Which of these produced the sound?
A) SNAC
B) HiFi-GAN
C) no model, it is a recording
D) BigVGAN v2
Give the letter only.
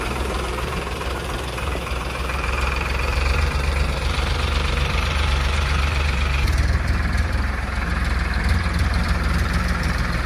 D